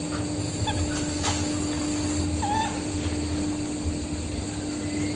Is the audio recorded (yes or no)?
yes